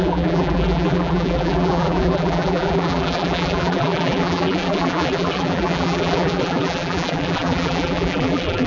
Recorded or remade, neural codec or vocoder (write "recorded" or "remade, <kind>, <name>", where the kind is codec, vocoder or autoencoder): remade, vocoder, BigVGAN v2